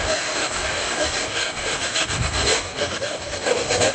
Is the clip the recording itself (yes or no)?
no